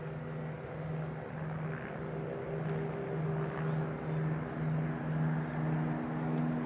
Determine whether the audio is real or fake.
real